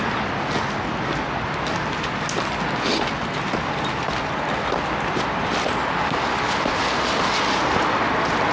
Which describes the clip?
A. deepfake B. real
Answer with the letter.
B